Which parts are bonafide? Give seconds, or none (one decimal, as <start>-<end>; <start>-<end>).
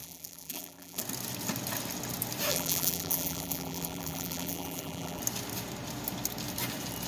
1.0-2.5; 5.2-7.1